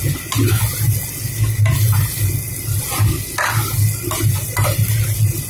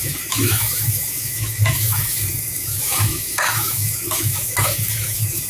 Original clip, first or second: first